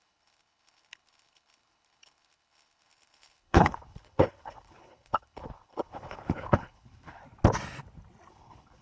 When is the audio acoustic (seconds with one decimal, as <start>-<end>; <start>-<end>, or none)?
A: 7.2-8.3